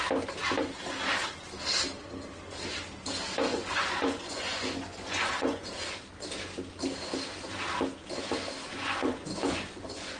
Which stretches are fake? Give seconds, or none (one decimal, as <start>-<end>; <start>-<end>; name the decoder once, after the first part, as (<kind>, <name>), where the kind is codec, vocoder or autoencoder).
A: 3.5-5.7 (vocoder, Vocos); 8.7-10.2